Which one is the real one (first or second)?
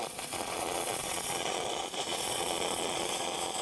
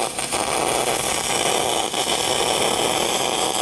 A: second